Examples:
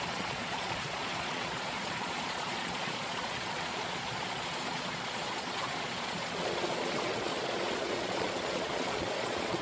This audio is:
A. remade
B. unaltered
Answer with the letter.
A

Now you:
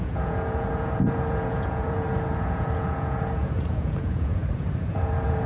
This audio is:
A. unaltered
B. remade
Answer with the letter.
B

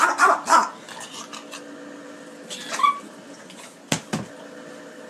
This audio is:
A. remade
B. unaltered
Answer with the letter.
B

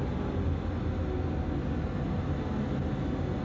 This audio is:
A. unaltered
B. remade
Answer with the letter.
A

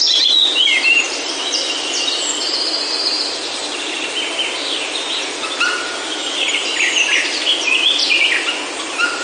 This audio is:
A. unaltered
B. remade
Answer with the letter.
A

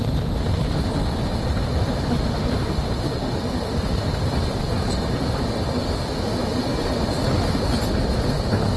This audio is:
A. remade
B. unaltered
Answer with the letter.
B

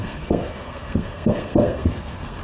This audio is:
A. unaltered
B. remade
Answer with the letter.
B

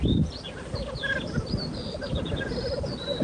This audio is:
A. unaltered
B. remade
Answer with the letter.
A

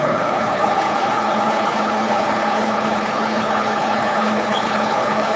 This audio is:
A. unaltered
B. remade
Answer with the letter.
B